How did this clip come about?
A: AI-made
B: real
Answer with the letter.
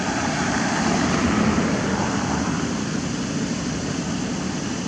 B